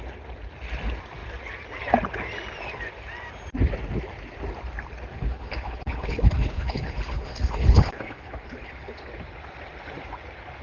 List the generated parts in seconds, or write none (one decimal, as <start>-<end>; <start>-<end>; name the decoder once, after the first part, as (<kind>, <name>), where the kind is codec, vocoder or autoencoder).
5.1-9.1 (codec, HILCodec)